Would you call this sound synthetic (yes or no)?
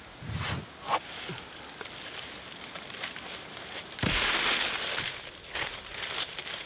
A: no